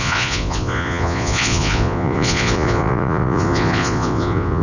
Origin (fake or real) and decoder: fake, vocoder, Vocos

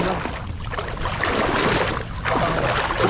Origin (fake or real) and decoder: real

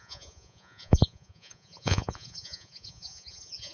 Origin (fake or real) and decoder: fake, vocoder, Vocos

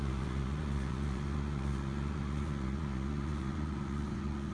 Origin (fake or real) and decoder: fake, vocoder, Vocos